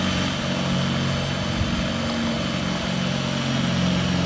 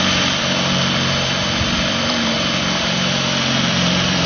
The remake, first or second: second